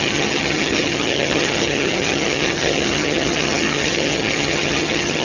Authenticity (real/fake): fake